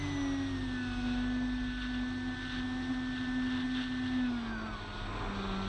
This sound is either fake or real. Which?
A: real